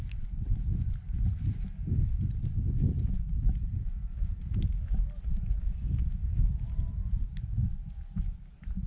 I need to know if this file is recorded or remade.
recorded